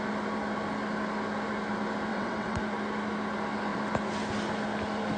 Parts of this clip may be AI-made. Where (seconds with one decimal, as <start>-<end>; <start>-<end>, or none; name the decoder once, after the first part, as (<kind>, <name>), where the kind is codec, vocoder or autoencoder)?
2.1-2.6 (vocoder, WaveNeXt)